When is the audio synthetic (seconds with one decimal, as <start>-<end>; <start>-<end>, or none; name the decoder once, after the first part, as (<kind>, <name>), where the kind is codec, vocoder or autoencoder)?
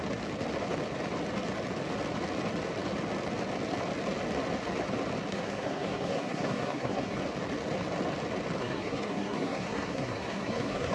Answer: 5.3-7.2 (codec, SNAC); 8.6-10.9